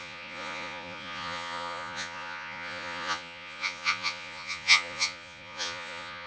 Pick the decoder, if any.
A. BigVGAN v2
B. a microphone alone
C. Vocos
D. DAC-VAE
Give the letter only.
C